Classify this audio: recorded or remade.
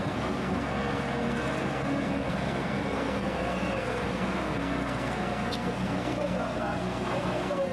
remade